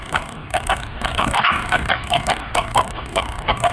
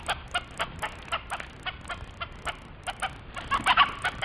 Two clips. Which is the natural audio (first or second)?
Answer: second